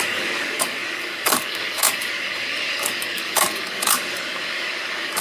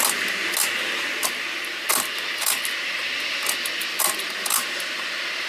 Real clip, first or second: second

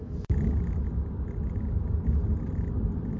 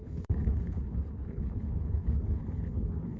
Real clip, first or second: first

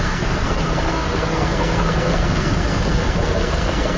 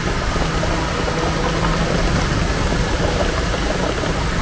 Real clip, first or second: second